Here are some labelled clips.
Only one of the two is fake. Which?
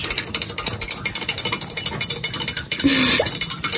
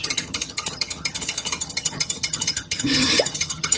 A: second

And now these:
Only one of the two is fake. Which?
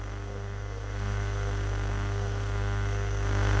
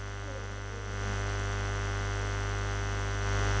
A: first